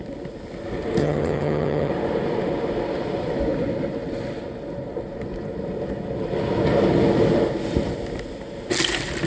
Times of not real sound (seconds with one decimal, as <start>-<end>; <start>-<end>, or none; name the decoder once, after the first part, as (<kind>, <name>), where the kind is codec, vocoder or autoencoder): 1.0-1.9 (vocoder, HiFi-GAN)